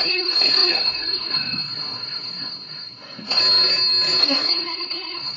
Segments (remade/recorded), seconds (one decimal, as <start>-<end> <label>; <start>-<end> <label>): 0.0-3.4 remade; 3.4-4.2 recorded; 4.2-5.4 remade